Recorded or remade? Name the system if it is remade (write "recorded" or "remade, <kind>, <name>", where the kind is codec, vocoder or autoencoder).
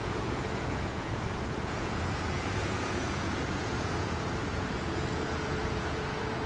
remade, vocoder, Vocos